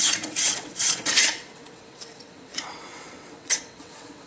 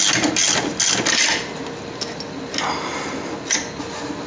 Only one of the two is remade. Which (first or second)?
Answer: first